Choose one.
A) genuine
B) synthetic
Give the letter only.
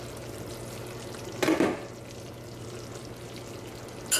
A